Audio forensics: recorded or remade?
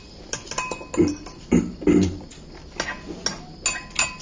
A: recorded